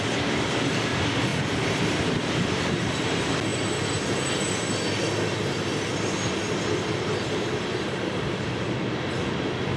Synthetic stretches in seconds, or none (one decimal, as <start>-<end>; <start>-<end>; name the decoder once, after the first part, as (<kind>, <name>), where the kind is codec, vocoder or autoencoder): none